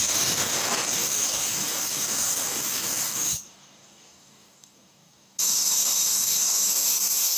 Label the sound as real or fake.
fake